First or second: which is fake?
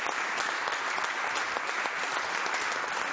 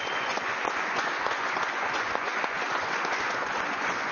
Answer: second